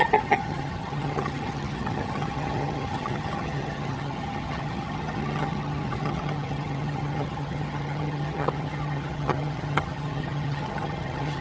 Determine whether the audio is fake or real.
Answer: fake